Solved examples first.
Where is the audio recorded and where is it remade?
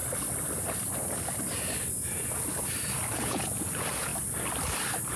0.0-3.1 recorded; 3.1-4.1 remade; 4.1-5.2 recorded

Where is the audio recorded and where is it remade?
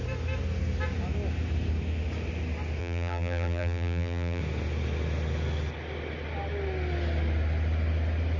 0.0-2.8 recorded; 2.8-4.4 remade; 4.4-8.4 recorded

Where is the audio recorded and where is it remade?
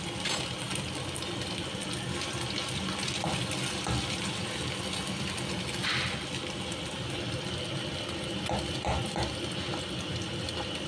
0.0-10.9 recorded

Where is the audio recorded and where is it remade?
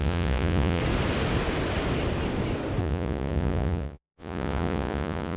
0.0-0.8 remade; 0.8-2.8 recorded; 2.8-5.4 remade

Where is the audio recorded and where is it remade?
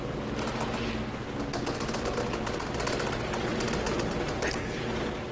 0.0-5.3 recorded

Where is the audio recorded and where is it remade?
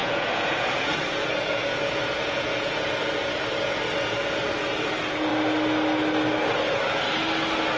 0.0-2.9 remade; 2.9-7.8 recorded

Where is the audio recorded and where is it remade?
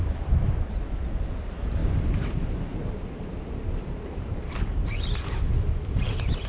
0.0-6.5 recorded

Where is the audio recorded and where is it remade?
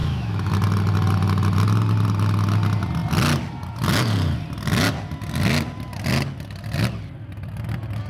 0.0-0.5 remade; 0.5-8.1 recorded